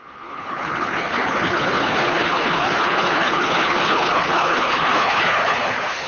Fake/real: fake